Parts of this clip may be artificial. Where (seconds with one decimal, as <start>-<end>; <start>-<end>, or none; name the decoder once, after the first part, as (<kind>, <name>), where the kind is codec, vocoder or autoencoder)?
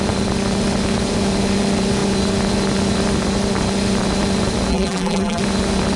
4.7-5.4 (vocoder, BigVGAN v2)